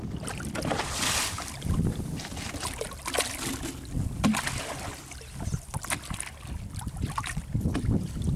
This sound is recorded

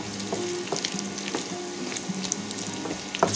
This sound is recorded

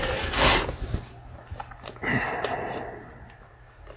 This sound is recorded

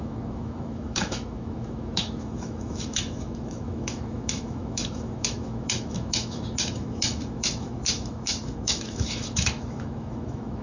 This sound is remade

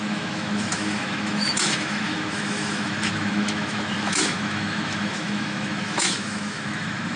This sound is remade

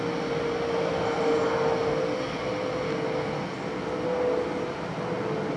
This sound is recorded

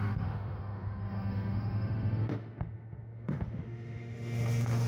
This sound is remade